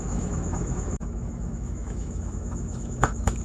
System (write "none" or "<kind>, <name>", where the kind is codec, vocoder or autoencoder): autoencoder, DAC-VAE